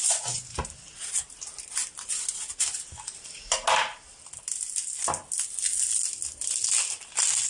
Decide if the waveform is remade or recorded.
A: recorded